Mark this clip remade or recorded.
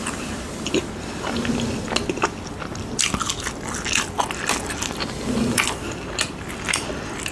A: recorded